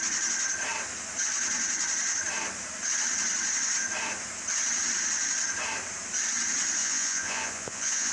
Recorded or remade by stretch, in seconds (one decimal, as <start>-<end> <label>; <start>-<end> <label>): 0.0-6.8 recorded; 6.8-8.1 remade